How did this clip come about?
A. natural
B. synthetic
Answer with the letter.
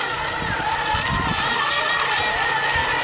A